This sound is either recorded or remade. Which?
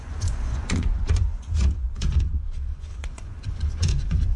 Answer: remade